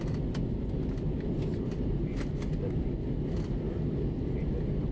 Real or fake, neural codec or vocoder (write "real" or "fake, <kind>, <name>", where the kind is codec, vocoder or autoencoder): real